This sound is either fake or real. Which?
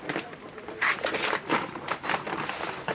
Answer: real